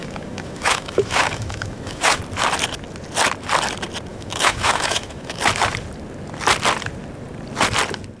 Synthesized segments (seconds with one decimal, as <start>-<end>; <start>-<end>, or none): 0.0-2.2; 4.1-5.4